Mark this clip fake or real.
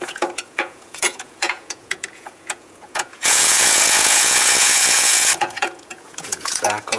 fake